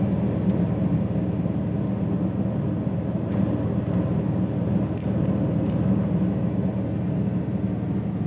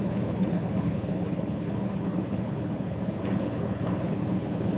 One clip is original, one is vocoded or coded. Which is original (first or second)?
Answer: first